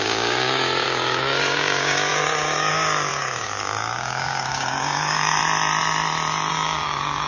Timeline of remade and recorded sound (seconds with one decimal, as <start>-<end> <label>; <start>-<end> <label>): 0.0-5.4 remade; 5.4-6.5 recorded; 6.5-7.3 remade